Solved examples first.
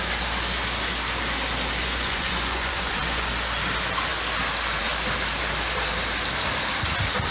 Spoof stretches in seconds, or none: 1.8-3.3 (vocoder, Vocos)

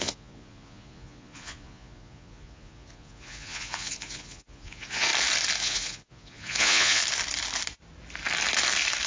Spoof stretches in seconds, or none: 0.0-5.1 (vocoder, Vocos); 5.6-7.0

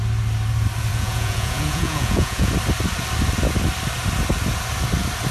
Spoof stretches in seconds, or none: 0.9-2.5 (vocoder, Vocos)